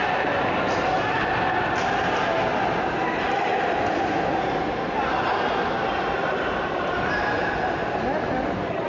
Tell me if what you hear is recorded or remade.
recorded